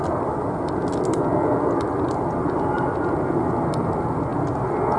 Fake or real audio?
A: real